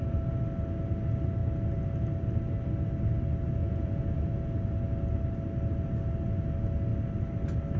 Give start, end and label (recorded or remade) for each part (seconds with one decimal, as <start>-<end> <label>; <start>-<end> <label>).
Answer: 0.0-3.6 recorded; 3.6-4.3 remade; 4.3-7.8 recorded